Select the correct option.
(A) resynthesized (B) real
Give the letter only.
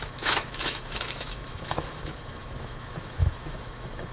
A